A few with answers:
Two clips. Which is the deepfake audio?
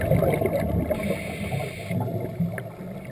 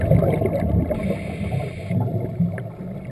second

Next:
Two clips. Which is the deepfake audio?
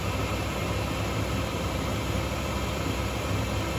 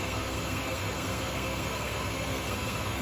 second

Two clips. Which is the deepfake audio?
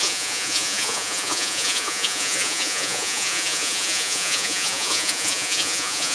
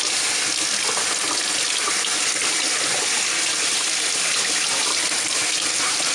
first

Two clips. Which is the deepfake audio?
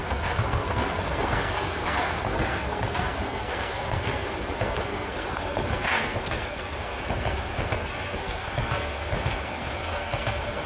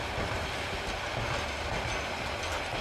first